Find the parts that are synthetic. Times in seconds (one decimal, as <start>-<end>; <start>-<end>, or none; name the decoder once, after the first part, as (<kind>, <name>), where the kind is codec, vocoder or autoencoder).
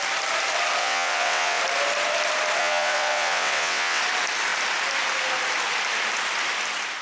0.8-1.6 (vocoder, WaveNeXt); 2.6-4.0